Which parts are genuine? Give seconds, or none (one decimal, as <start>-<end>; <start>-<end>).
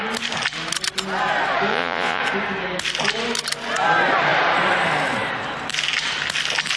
0.0-1.7; 2.2-6.8